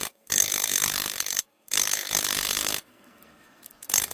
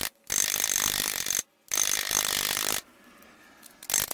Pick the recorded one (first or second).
second